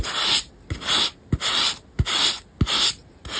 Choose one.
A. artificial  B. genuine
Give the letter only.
B